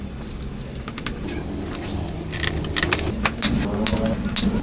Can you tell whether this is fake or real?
real